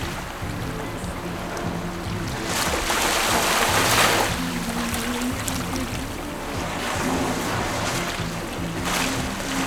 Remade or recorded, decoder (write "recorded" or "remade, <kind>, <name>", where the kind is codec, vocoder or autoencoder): recorded